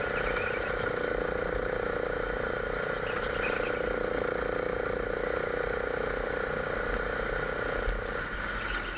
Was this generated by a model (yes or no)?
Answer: no